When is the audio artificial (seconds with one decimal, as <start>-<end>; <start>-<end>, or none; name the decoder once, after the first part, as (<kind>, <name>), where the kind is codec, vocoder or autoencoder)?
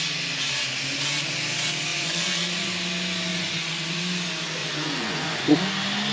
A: 1.9-2.7 (vocoder, Vocos); 3.3-4.0; 4.6-5.6